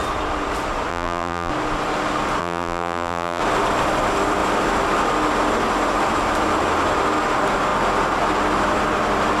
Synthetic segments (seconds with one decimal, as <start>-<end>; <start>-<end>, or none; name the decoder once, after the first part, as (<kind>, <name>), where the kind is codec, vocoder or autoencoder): 0.9-1.5 (vocoder, BigVGAN v2); 2.4-3.4